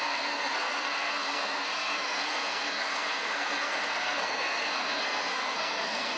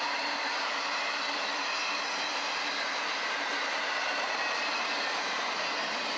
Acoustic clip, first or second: second